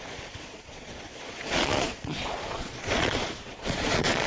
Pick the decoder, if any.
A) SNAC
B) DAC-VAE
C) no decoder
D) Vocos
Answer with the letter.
D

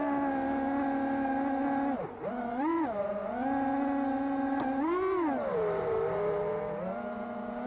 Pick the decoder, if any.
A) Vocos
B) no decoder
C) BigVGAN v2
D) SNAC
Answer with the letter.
B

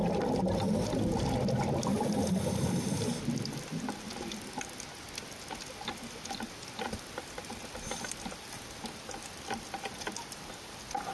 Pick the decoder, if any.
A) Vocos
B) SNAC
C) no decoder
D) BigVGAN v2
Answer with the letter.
C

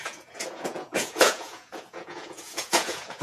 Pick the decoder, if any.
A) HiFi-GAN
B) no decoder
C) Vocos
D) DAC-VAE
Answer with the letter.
C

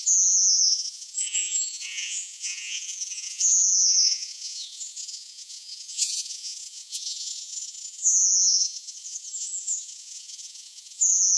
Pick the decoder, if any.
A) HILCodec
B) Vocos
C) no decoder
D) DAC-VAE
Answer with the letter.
B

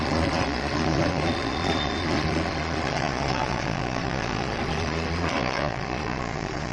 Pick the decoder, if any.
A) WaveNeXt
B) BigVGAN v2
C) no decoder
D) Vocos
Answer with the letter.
D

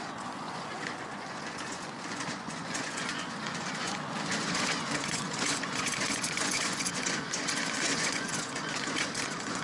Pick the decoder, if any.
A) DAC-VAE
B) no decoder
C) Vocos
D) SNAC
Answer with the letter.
C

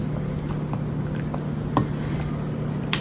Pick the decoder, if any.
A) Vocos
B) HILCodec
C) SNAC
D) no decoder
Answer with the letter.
D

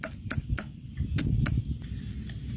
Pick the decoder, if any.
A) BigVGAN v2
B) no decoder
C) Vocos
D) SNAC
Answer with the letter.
B